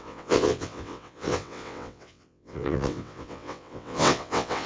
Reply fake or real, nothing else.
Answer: fake